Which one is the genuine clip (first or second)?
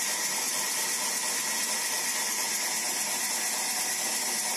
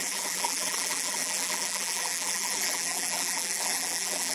first